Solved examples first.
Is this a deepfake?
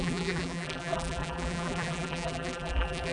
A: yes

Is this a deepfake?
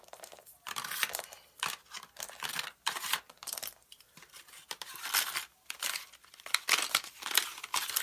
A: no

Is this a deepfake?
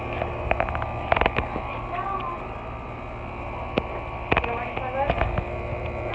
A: no